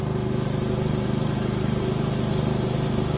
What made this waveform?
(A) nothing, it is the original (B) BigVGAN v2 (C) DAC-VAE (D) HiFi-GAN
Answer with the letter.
A